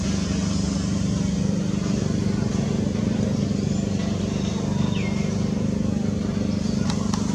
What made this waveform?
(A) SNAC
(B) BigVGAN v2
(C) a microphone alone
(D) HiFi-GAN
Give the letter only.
C